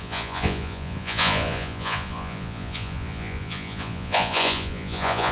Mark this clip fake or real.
fake